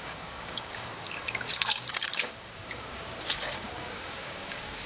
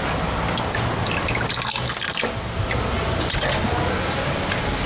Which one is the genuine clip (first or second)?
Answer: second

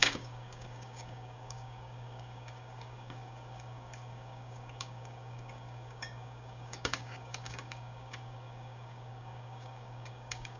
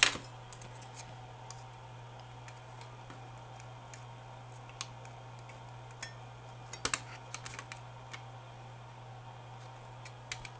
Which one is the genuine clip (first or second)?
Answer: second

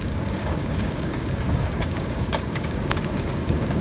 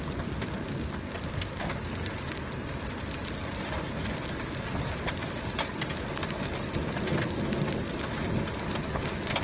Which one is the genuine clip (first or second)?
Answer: second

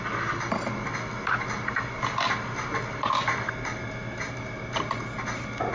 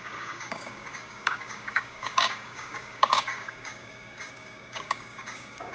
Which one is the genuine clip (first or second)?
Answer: first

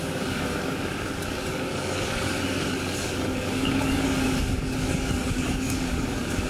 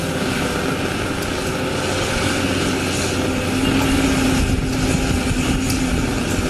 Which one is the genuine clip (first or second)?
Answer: second